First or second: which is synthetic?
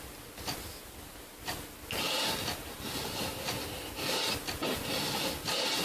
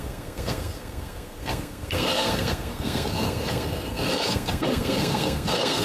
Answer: second